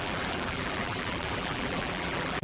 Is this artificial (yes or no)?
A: yes